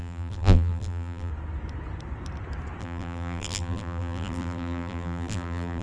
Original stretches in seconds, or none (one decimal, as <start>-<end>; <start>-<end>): 1.3-2.8